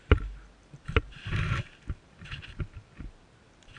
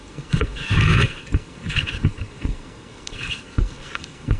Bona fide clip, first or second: first